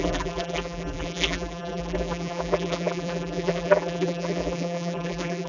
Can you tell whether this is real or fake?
fake